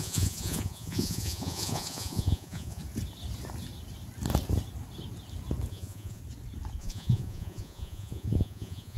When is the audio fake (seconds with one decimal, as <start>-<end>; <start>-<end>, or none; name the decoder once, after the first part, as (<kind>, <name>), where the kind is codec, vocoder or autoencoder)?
0.0-2.8 (vocoder, Vocos); 5.7-6.2; 6.8-9.0